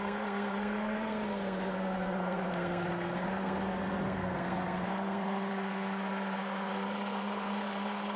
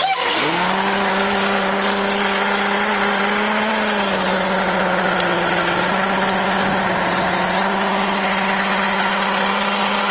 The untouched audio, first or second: second